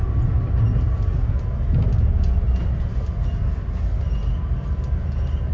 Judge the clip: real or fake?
real